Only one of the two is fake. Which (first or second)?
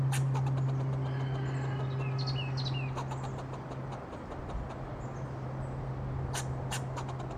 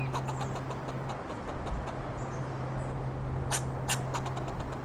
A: first